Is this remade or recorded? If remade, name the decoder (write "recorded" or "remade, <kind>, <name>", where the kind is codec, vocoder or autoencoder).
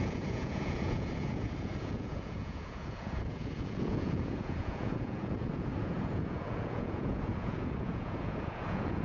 remade, vocoder, Vocos